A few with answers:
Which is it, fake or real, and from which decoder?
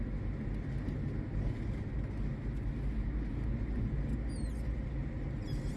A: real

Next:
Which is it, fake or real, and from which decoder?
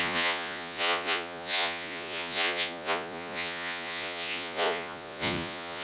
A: fake, vocoder, Vocos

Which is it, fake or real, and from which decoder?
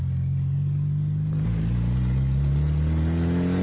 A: real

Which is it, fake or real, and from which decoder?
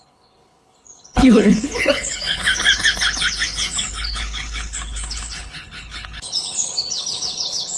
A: fake, codec, HILCodec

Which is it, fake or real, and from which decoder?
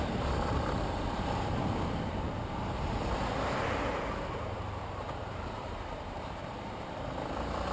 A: fake, vocoder, BigVGAN v2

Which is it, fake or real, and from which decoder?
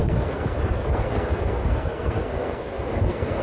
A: fake, codec, SNAC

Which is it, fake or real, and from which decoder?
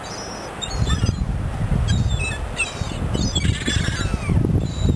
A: real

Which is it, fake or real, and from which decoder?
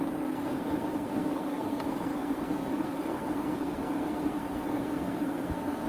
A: fake, codec, SNAC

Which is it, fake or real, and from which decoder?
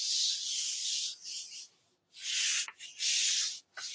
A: real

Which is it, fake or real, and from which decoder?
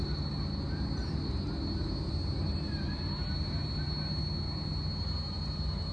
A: real